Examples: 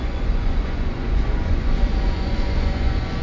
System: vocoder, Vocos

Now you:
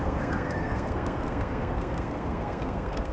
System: codec, SNAC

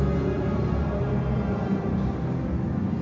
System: none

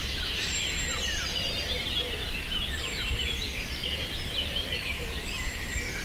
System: vocoder, BigVGAN v2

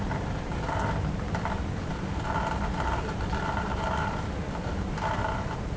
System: vocoder, BigVGAN v2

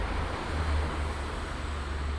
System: none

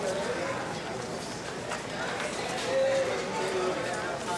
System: none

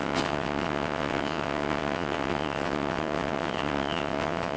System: vocoder, WaveNeXt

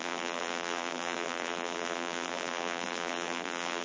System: vocoder, BigVGAN v2